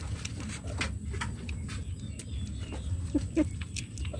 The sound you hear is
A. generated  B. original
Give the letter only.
B